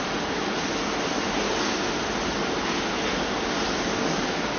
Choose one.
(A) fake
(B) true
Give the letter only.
B